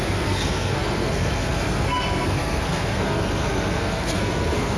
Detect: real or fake fake